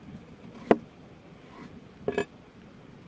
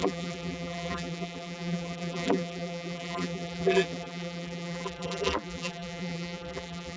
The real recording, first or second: first